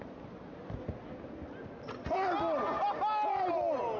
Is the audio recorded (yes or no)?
yes